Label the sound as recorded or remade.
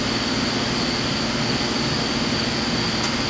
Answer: recorded